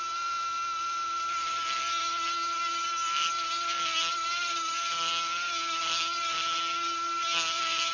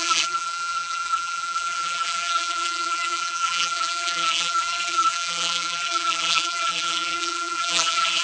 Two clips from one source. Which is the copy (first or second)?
second